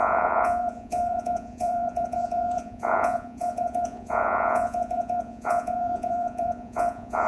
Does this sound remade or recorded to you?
remade